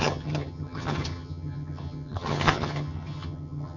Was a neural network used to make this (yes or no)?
yes